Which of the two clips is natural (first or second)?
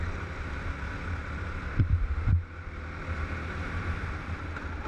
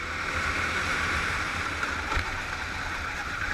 first